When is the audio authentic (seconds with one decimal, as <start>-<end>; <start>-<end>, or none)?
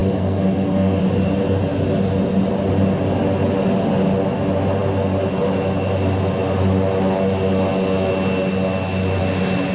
1.0-9.7